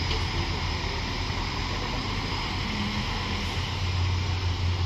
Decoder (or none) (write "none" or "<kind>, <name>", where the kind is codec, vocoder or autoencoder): none